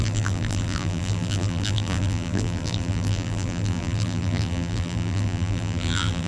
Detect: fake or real fake